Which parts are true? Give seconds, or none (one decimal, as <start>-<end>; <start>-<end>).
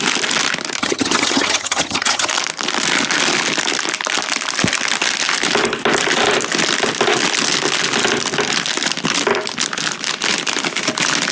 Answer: 0.0-0.8; 2.3-11.3